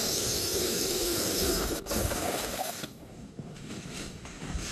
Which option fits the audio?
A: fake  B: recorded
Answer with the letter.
A